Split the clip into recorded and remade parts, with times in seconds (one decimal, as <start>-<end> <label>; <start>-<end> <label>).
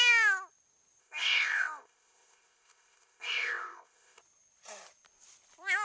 0.0-1.0 recorded; 1.0-4.2 remade; 4.2-5.8 recorded